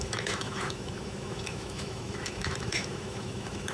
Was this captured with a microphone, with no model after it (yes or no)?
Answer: no